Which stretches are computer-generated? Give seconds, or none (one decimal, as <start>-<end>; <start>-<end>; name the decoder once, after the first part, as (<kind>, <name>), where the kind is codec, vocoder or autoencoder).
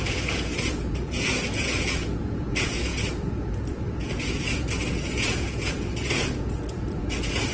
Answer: 0.0-7.5 (vocoder, Vocos)